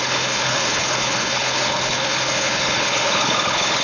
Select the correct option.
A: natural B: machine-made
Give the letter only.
B